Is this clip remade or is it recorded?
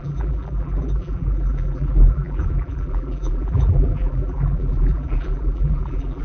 remade